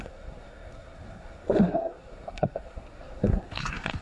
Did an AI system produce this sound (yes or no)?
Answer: yes